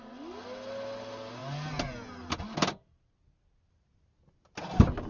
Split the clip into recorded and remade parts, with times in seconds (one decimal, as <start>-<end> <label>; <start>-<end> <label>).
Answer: 0.0-5.1 recorded